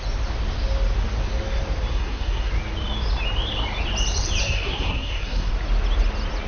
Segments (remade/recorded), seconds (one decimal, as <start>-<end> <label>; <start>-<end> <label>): 0.0-1.9 recorded; 1.9-2.5 remade; 2.5-4.4 recorded; 4.4-5.5 remade; 5.5-6.5 recorded

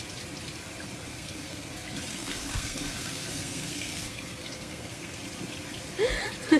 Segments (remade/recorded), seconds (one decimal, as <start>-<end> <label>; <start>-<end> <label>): 0.0-1.1 recorded; 1.1-1.7 remade; 1.7-2.1 recorded; 2.1-5.2 remade; 5.2-6.6 recorded

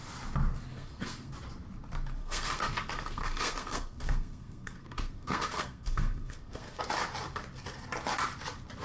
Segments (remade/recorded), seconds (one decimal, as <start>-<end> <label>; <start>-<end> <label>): 0.0-0.7 recorded; 0.7-1.3 remade; 1.3-2.2 recorded; 2.2-6.8 remade; 6.8-8.8 recorded